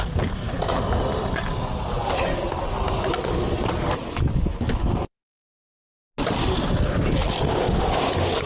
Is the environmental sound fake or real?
real